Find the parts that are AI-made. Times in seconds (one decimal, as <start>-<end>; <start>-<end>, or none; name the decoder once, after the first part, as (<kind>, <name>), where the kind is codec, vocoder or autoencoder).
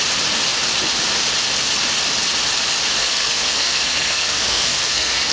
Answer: 3.0-5.3 (codec, SNAC)